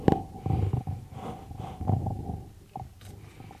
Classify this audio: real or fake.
real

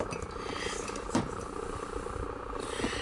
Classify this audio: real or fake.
real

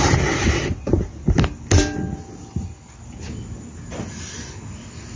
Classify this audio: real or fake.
real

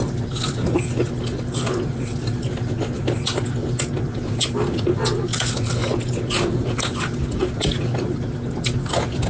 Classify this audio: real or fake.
real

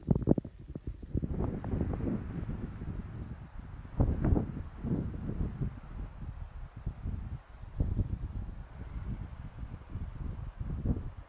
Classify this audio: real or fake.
real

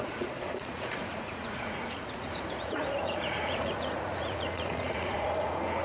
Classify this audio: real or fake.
fake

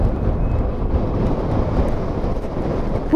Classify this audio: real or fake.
real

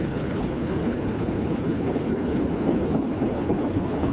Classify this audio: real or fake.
fake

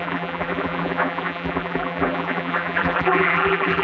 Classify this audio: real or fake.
fake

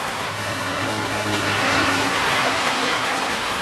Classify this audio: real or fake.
fake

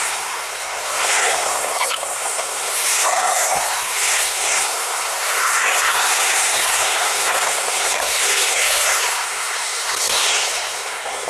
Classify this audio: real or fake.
fake